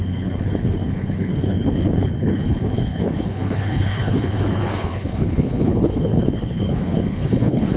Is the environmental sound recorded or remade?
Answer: remade